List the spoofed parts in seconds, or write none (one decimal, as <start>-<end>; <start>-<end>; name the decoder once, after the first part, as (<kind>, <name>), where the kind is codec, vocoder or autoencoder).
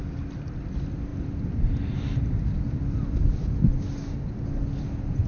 none